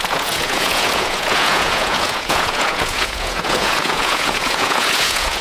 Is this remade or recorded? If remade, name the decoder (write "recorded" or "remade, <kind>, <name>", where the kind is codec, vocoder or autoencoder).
remade, vocoder, Vocos